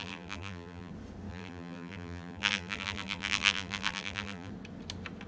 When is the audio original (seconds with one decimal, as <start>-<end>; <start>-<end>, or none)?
0.9-1.3; 4.5-5.3